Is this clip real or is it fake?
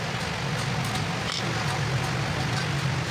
real